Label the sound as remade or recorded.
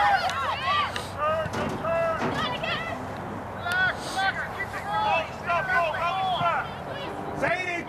recorded